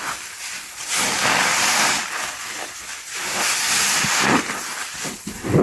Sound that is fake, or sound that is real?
fake